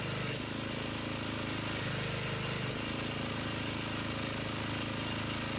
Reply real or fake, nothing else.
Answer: real